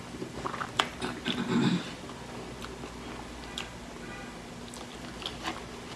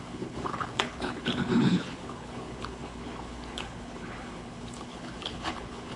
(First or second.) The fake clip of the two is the second